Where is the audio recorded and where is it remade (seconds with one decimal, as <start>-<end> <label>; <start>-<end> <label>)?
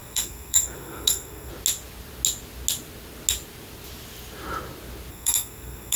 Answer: 0.0-1.5 remade; 1.5-5.1 recorded; 5.1-6.0 remade